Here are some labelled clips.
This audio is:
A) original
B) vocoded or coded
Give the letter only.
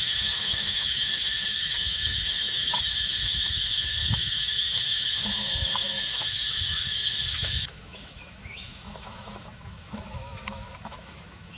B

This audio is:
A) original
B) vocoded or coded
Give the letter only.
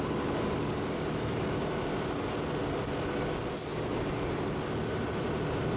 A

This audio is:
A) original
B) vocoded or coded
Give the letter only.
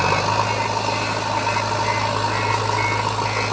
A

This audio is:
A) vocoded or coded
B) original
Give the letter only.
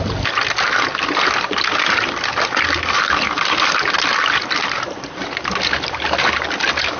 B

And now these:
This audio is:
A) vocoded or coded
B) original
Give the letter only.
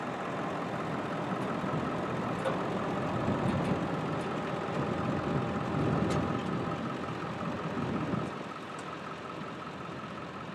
B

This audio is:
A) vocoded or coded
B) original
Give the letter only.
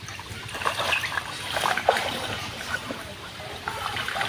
A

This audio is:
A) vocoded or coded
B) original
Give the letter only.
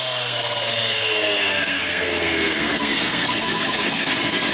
A